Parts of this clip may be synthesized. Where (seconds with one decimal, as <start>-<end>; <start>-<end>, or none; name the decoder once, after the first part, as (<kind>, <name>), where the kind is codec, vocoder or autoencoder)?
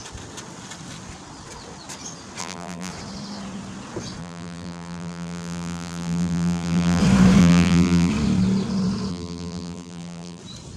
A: 2.4-2.9 (vocoder, BigVGAN v2); 4.2-7.0; 7.4-8.1; 9.1-10.4